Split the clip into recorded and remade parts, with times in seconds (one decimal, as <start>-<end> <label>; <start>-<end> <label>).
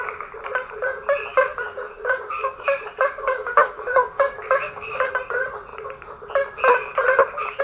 0.0-1.3 recorded; 1.3-5.1 remade; 5.1-7.6 recorded